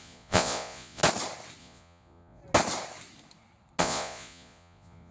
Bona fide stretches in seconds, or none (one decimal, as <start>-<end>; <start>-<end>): 1.0-1.6; 2.4-3.8